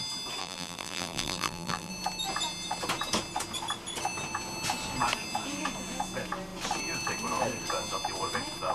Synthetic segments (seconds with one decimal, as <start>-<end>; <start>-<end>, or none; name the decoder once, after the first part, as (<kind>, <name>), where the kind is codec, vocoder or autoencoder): 0.4-1.9 (vocoder, BigVGAN v2)